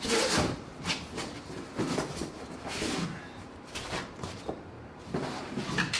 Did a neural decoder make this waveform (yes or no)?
no